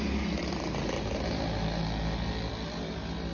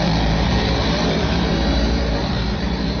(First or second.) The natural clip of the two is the first